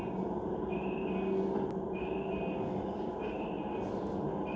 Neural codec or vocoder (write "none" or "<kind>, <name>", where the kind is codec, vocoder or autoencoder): none